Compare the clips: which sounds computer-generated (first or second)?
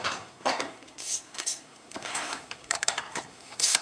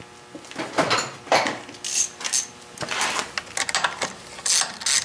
first